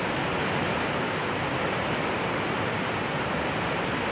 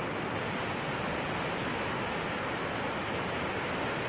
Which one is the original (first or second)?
second